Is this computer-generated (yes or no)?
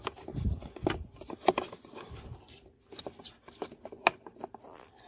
no